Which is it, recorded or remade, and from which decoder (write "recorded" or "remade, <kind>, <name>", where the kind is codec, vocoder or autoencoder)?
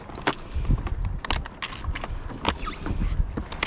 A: recorded